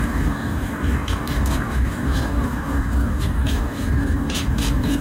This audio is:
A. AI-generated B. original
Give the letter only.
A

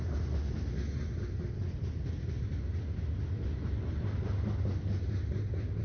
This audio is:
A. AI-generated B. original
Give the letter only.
B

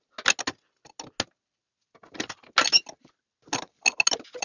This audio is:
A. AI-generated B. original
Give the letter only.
B